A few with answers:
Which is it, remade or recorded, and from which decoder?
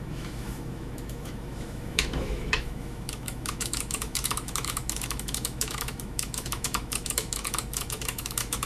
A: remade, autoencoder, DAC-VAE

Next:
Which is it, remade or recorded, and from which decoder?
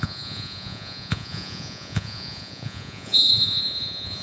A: remade, vocoder, Vocos